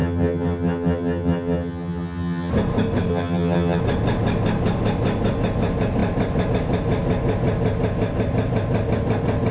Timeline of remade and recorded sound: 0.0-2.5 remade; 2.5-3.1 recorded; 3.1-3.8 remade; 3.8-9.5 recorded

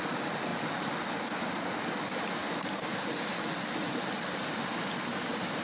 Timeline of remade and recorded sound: 0.0-5.6 recorded

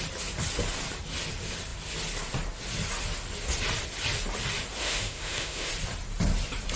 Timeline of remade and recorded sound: 0.0-4.8 recorded; 4.8-5.7 remade; 5.7-6.8 recorded

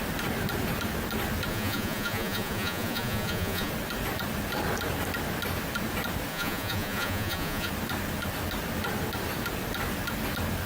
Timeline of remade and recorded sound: 0.0-1.5 recorded; 1.5-3.7 remade; 3.7-6.3 recorded; 6.3-7.7 remade; 7.7-10.7 recorded

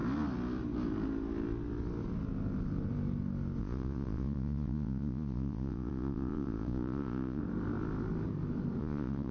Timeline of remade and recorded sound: 0.0-3.6 recorded; 3.6-7.4 remade; 7.4-8.8 recorded; 8.8-9.3 remade

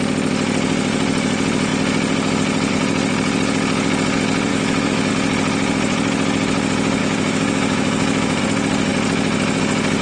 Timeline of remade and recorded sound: 0.0-4.5 recorded; 4.5-5.1 remade; 5.1-7.0 recorded; 7.0-8.4 remade; 8.4-10.0 recorded